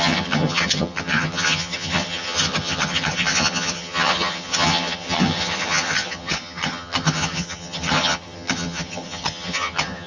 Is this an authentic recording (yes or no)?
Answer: no